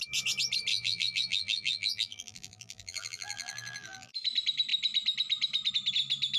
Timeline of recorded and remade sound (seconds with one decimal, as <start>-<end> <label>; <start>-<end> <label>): 0.0-0.7 recorded; 0.7-4.1 remade; 4.1-6.4 recorded